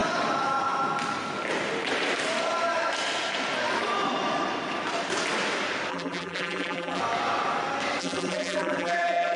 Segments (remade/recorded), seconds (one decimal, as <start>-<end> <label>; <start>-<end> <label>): 0.0-5.9 recorded; 5.9-7.0 remade; 7.0-8.0 recorded; 8.0-9.4 remade

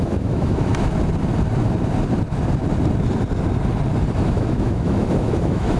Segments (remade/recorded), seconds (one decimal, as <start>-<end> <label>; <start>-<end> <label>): 0.0-0.7 remade; 0.7-4.2 recorded; 4.2-5.8 remade